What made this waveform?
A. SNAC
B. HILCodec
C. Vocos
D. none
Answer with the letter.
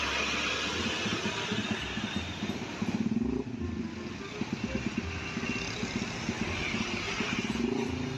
D